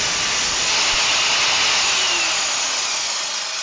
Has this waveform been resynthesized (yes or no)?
no